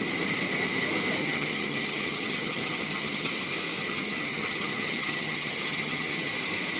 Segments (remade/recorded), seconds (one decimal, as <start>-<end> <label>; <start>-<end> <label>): 0.0-1.2 recorded; 1.2-3.3 remade; 3.3-3.8 recorded; 3.8-6.3 remade; 6.3-6.8 recorded